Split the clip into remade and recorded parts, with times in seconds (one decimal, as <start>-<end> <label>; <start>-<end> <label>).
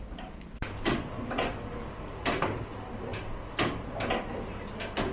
0.0-5.1 recorded